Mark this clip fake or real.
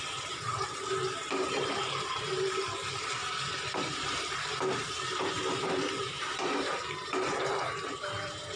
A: fake